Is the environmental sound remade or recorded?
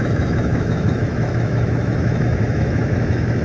remade